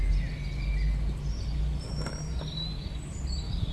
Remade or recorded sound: recorded